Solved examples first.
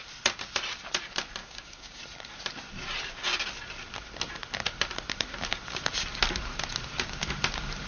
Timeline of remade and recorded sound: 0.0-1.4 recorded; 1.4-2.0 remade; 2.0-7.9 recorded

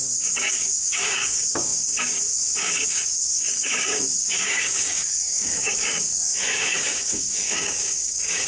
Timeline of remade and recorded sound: 0.0-8.5 remade

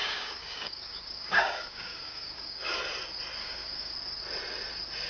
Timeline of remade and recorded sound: 0.0-2.8 remade; 2.8-3.4 recorded; 3.4-3.9 remade; 3.9-5.1 recorded

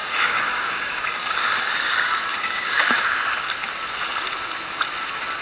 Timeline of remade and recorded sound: 0.0-1.9 remade; 1.9-2.3 recorded; 2.3-3.2 remade; 3.2-5.4 recorded

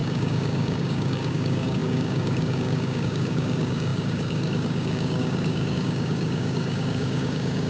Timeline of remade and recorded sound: 0.0-7.7 remade

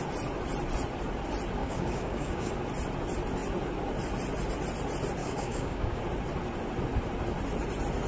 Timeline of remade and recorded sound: 0.0-1.6 recorded; 1.6-2.5 remade; 2.5-5.2 recorded; 5.2-6.0 remade; 6.0-8.1 recorded

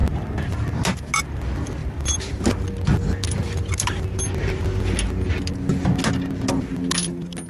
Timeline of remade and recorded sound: 0.0-7.5 recorded

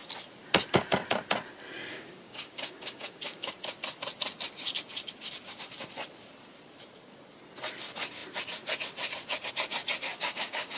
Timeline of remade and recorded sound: 0.0-1.9 recorded; 1.9-3.5 remade; 3.5-10.1 recorded; 10.1-10.8 remade